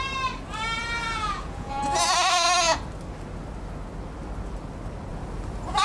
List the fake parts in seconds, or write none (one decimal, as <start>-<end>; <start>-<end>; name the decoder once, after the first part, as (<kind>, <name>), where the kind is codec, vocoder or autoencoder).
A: 0.8-1.8 (vocoder, Vocos)

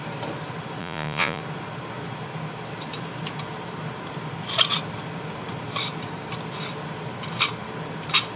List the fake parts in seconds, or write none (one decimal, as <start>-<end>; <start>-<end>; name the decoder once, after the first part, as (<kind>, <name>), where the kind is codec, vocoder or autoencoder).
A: 0.8-1.4 (vocoder, Vocos)

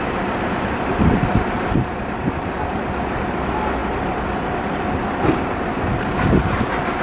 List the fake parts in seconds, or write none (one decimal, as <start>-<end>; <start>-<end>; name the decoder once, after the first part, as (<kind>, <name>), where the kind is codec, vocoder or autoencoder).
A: none